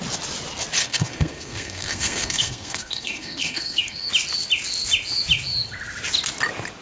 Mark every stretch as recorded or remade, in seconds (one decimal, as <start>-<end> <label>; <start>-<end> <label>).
0.0-0.8 recorded; 0.8-4.1 remade; 4.1-6.8 recorded